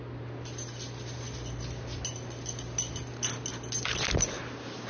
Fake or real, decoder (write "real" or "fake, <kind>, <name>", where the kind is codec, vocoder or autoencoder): real